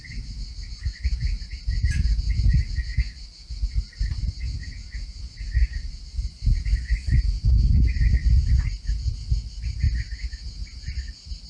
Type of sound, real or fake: real